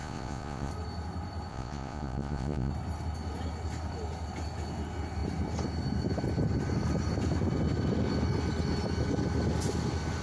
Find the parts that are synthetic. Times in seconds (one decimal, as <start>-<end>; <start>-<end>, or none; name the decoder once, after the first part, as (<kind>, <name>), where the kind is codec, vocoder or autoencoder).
0.0-0.7 (vocoder, Vocos); 1.5-2.7